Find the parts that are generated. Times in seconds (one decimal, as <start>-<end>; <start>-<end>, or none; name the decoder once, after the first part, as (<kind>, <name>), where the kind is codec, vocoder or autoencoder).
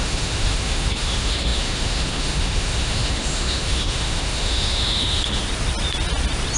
0.0-5.4 (autoencoder, DAC-VAE)